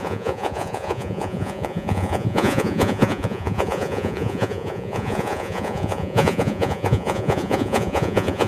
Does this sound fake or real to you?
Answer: fake